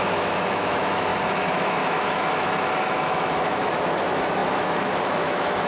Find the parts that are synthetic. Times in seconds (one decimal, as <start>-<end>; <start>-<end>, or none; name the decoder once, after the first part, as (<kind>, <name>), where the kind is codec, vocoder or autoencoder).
0.0-5.7 (autoencoder, DAC-VAE)